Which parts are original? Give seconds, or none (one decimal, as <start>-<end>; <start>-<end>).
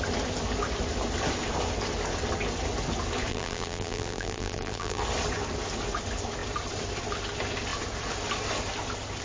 0.0-3.3; 5.0-9.2